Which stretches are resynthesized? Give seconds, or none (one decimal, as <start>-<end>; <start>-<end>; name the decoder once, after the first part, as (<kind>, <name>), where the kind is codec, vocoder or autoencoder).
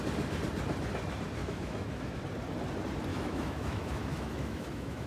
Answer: 1.4-2.2 (autoencoder, DAC-VAE); 3.1-5.1